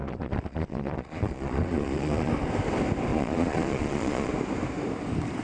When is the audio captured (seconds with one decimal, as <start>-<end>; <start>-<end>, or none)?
2.3-3.1; 4.3-5.4